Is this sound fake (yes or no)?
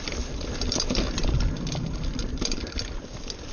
no